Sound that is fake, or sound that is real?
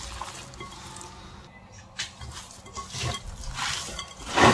real